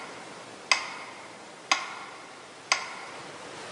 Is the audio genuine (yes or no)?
yes